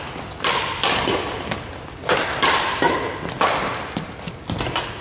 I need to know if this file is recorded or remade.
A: recorded